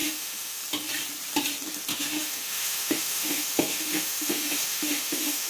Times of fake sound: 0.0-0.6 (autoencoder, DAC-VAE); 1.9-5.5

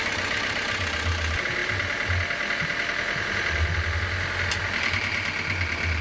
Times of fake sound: none